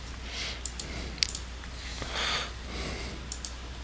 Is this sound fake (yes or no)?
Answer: no